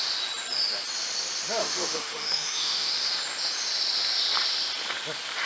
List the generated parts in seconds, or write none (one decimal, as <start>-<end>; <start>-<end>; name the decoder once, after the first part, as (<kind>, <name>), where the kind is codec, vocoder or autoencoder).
1.6-2.9 (autoencoder, DAC-VAE)